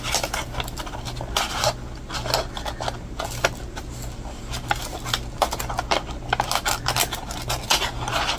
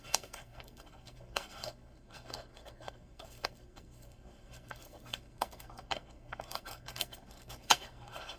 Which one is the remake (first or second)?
second